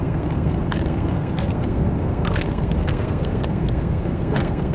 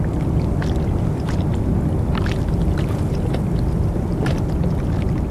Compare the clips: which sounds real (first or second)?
second